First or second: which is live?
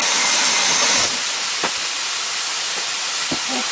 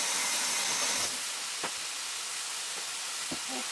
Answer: second